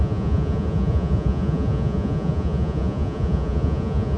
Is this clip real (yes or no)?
no